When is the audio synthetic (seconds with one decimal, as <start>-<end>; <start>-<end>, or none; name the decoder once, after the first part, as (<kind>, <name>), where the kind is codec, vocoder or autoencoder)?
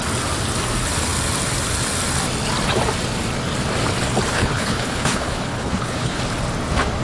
4.3-6.2 (codec, HILCodec)